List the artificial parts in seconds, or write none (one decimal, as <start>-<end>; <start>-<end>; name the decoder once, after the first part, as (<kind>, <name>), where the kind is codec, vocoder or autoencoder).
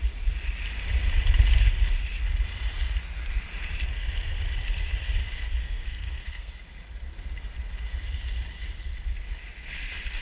5.6-6.5 (codec, SNAC)